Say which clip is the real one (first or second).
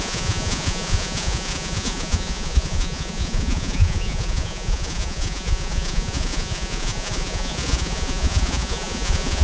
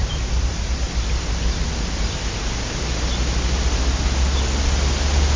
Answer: second